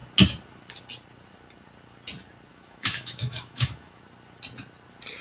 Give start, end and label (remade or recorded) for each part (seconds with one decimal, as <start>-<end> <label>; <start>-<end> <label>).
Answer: 0.0-2.5 recorded; 2.5-4.0 remade; 4.0-5.2 recorded

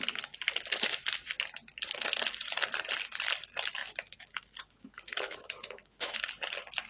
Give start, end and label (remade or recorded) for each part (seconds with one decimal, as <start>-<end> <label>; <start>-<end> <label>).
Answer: 0.0-3.8 recorded; 3.8-6.3 remade; 6.3-6.9 recorded